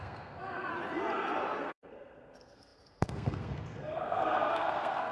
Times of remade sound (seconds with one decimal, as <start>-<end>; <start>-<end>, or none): 0.0-0.7; 1.6-5.1